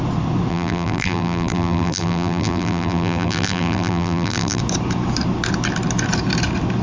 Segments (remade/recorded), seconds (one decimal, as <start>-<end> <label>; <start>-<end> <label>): 0.0-0.5 recorded; 0.5-4.6 remade; 4.6-6.8 recorded